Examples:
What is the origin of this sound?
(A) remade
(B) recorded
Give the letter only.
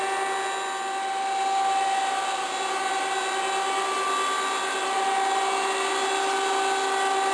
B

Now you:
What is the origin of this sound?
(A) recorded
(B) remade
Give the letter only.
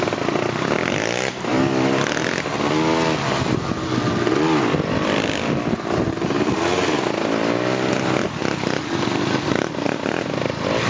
A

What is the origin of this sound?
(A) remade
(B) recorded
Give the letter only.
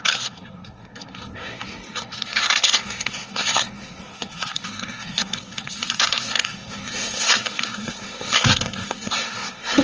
A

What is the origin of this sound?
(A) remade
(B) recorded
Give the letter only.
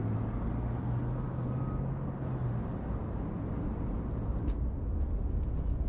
B